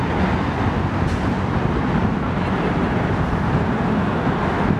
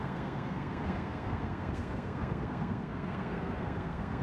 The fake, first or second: second